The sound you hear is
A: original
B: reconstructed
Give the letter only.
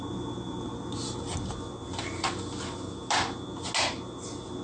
A